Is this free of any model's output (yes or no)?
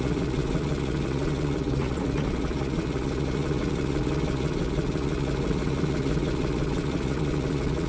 no